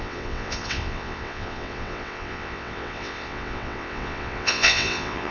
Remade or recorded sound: remade